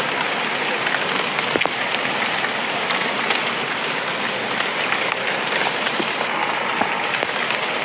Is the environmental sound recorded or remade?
recorded